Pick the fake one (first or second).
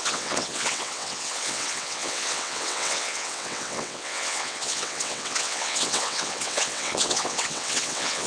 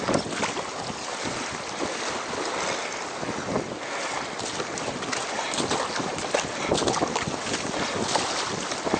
first